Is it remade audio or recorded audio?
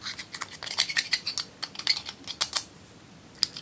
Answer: recorded